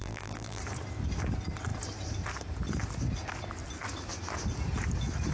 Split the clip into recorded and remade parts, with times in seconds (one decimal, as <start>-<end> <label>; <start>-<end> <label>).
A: 0.0-0.6 remade; 0.6-5.3 recorded